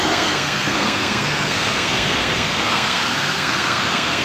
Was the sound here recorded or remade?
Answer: remade